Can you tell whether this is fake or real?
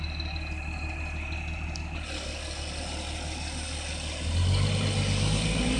real